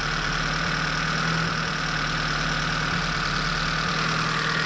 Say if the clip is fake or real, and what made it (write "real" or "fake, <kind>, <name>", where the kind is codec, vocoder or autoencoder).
real